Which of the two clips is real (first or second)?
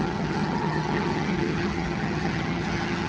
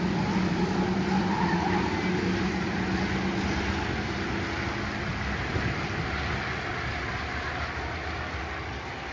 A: second